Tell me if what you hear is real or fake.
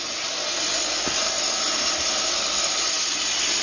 real